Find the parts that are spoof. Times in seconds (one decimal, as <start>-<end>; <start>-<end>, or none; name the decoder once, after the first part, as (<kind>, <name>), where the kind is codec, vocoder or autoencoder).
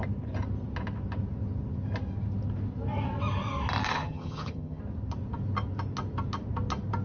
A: 3.9-4.8 (vocoder, HiFi-GAN)